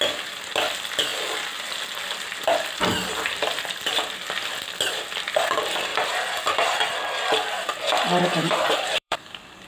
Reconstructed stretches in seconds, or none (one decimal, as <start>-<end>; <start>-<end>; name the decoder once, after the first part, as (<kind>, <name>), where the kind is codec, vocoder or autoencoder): 5.9-6.8 (vocoder, BigVGAN v2); 8.4-9.2